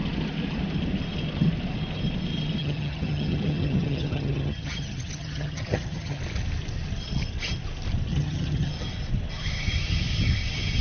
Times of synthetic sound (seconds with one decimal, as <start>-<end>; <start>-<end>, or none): 2.6-6.2; 8.1-8.7